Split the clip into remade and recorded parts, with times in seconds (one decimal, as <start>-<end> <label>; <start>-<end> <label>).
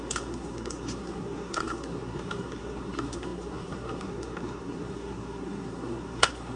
0.0-6.6 remade